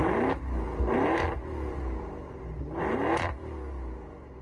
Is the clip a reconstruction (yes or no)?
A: yes